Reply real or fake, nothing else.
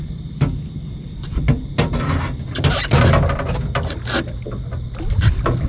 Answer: real